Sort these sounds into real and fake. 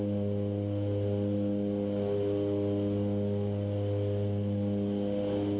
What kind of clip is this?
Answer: real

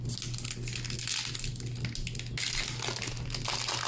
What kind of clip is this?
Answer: real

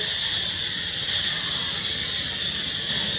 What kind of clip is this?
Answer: real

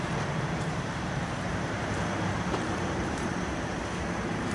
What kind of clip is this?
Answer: fake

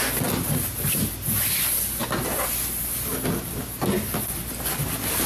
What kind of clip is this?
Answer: real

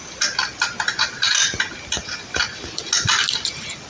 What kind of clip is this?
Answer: real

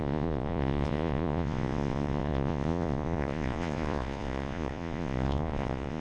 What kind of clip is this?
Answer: fake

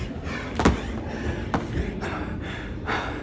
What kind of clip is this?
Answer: real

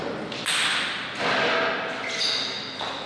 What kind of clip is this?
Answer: real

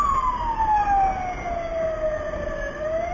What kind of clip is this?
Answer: real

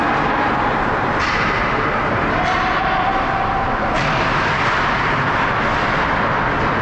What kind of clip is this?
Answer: real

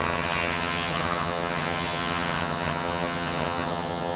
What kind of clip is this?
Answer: fake